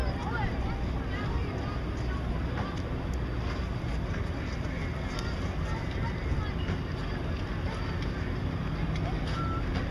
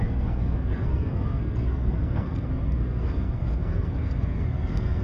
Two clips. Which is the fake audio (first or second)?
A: second